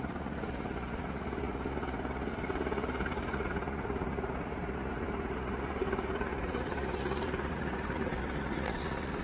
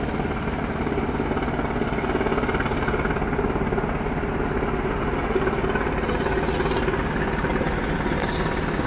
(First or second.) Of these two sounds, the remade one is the first